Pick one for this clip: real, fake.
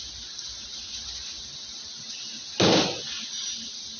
real